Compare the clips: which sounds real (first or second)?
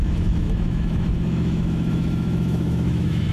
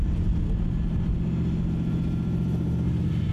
second